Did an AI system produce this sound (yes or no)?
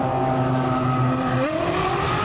no